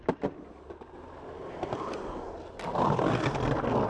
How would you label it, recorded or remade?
recorded